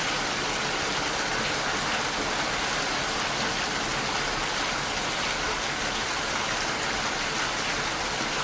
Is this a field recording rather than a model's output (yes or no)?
yes